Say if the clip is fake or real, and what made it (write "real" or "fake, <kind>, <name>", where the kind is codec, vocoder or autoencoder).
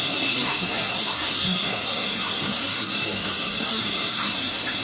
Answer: fake, codec, SNAC